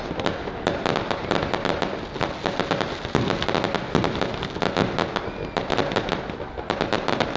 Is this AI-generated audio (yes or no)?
no